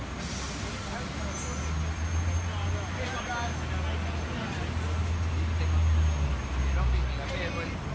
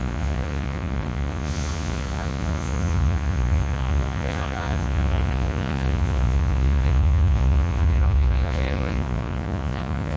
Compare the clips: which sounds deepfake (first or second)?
second